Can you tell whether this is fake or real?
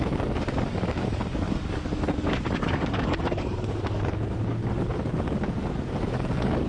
fake